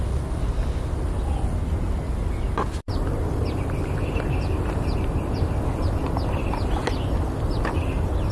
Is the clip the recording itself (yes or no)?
yes